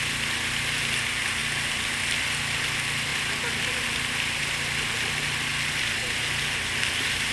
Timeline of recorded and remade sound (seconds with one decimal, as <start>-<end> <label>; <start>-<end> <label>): 0.0-1.4 recorded; 1.4-2.2 remade; 2.2-3.1 recorded; 3.1-4.4 remade; 4.4-7.3 recorded